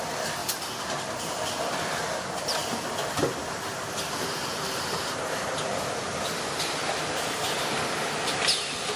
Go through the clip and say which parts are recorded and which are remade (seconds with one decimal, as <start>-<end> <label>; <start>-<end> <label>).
0.0-2.6 remade; 2.6-3.2 recorded; 3.2-9.0 remade